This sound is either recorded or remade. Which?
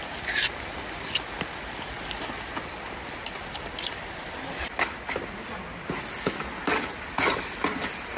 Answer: recorded